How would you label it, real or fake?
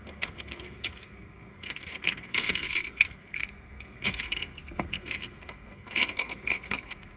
fake